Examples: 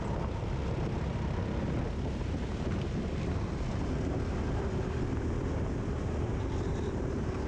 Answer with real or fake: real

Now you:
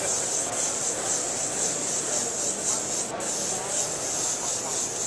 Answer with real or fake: real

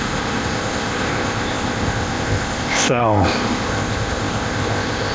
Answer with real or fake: fake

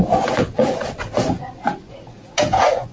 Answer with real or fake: fake